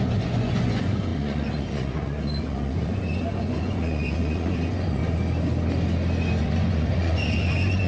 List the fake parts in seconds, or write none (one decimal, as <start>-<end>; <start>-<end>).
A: 0.0-5.0; 6.4-7.9